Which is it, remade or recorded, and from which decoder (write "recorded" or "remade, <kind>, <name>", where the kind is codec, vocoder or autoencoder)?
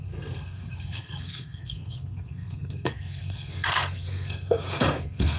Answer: remade, codec, SNAC